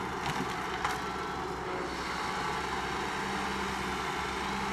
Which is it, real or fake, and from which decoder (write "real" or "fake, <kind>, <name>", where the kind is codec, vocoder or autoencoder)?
real